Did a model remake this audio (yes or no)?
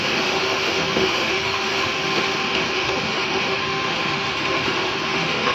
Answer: yes